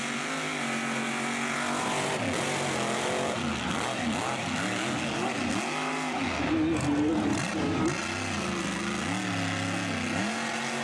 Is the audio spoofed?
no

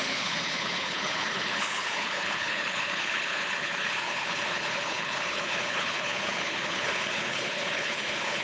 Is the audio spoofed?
yes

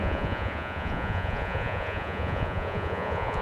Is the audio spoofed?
yes